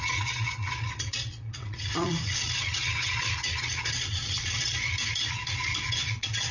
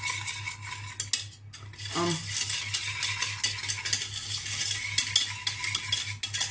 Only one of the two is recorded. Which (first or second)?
second